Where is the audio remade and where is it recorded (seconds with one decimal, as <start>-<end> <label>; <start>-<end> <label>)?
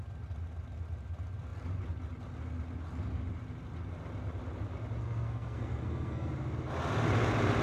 0.0-5.0 recorded; 5.0-6.3 remade; 6.3-7.6 recorded